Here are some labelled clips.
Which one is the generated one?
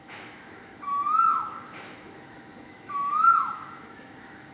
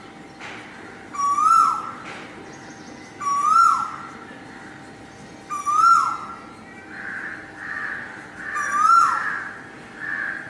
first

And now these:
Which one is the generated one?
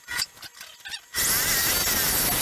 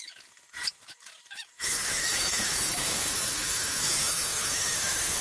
second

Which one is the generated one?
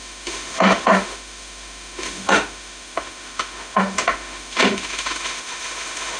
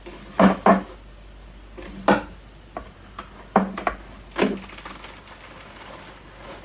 first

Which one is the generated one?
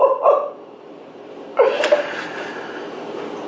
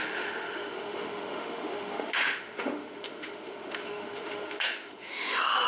second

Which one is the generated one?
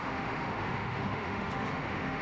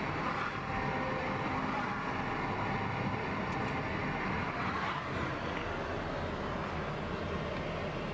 first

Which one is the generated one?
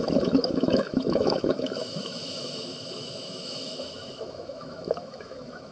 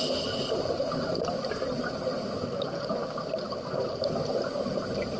first